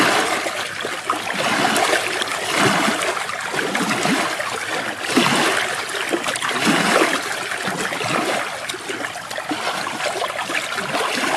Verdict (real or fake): real